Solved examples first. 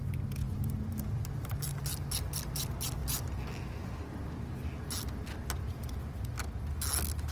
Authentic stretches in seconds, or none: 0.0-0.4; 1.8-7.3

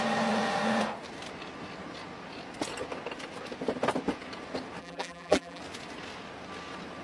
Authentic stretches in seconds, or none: 0.0-4.8; 5.6-7.0